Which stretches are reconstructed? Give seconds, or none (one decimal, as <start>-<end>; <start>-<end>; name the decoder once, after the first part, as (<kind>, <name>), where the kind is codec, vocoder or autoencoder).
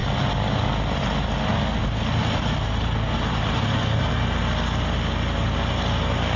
1.8-4.4 (vocoder, BigVGAN v2)